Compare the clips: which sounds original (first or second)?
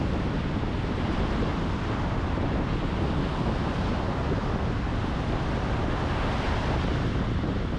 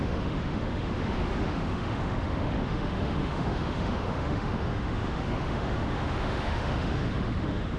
first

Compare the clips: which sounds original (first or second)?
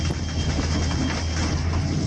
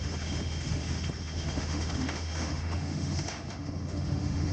first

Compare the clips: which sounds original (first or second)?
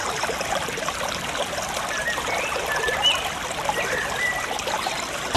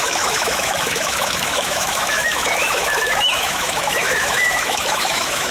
first